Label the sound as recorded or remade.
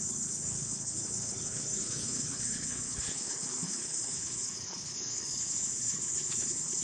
remade